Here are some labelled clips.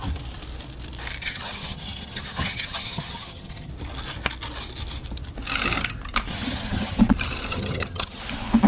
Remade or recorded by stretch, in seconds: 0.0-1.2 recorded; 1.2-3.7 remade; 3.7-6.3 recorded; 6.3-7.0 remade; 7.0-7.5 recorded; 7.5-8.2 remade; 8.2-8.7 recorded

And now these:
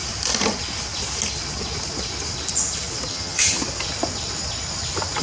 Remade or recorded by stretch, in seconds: 0.0-3.1 recorded; 3.1-3.6 remade; 3.6-5.2 recorded

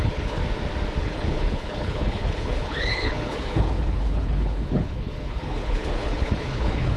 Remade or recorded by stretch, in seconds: 0.0-0.4 remade; 0.4-1.0 recorded; 1.0-7.0 remade